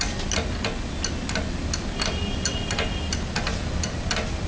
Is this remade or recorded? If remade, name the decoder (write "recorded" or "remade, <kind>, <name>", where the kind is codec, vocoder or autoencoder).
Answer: recorded